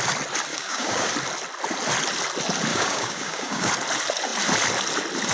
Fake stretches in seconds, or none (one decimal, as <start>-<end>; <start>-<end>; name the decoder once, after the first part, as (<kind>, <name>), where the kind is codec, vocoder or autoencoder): 0.5-1.1 (codec, DAC); 2.7-3.7